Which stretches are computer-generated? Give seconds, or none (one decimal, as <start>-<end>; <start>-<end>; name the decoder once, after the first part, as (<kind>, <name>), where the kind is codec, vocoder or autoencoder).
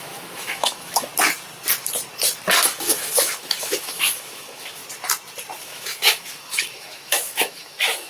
0.0-1.1 (autoencoder, DAC-VAE); 2.6-4.8; 5.6-8.1